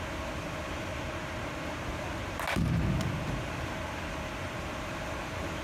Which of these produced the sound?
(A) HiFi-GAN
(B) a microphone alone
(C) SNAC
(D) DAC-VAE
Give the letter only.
B